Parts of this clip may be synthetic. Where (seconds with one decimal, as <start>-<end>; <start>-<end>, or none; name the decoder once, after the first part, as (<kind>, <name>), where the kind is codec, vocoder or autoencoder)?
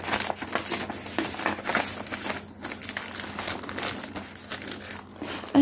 none